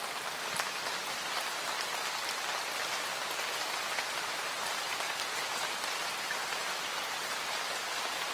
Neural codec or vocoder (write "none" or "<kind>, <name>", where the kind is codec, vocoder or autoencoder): vocoder, BigVGAN v2